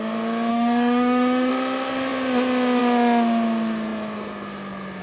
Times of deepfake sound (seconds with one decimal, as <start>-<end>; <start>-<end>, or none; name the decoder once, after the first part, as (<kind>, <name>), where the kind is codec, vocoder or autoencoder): 0.5-1.5 (autoencoder, DAC-VAE)